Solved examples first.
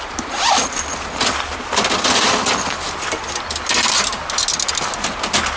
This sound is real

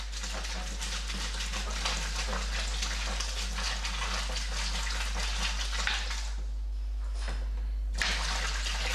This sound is real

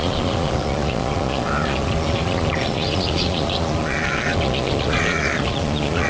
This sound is fake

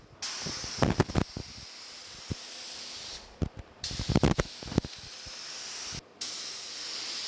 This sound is real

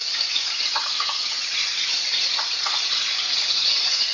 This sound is fake